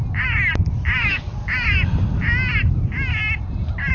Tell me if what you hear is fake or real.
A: real